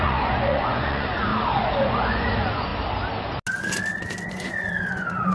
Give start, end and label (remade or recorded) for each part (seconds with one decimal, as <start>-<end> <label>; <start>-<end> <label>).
0.0-1.3 remade; 1.3-1.8 recorded; 1.8-2.7 remade; 2.7-4.3 recorded; 4.3-5.3 remade